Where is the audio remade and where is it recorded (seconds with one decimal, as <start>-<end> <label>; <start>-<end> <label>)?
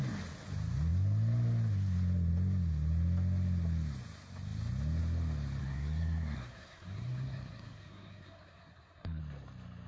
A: 0.0-5.6 recorded; 5.6-9.2 remade; 9.2-9.9 recorded